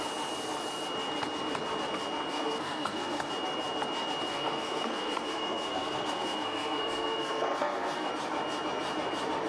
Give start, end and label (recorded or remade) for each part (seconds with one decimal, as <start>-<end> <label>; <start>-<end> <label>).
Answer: 0.0-2.3 recorded; 2.3-3.3 remade; 3.3-4.3 recorded; 4.3-8.1 remade; 8.1-9.5 recorded